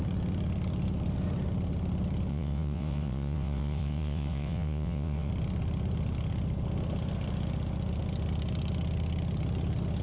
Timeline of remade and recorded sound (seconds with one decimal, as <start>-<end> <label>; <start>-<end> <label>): 0.0-2.3 recorded; 2.3-5.3 remade; 5.3-10.0 recorded